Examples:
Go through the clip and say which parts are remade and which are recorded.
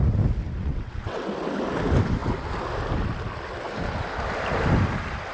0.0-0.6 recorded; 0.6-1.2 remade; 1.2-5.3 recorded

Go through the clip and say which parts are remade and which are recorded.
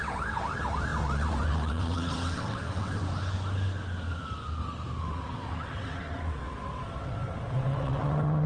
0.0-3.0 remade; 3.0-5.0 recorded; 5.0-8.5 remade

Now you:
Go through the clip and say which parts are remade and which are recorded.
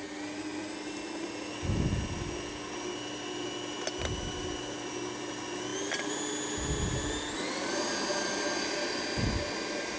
0.0-10.0 recorded